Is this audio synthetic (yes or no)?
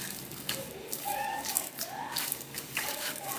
yes